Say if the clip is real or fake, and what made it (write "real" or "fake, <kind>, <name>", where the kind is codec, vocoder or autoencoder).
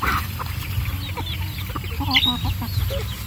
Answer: real